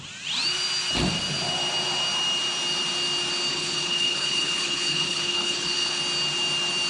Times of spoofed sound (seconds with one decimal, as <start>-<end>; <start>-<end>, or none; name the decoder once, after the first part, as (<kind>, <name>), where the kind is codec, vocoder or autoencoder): 3.5-6.0 (codec, HILCodec)